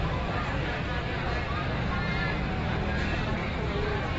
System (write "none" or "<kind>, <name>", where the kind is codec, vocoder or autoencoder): none